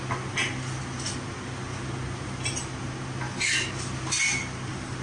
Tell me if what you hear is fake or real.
real